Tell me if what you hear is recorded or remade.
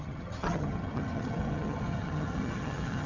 remade